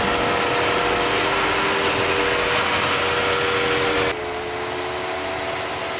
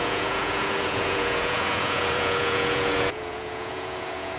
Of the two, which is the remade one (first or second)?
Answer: second